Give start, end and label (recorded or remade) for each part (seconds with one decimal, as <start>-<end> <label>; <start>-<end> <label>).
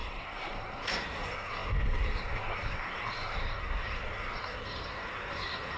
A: 0.0-5.8 remade